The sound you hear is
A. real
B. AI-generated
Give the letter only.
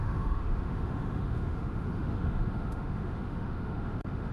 B